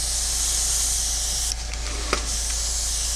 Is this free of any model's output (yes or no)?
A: yes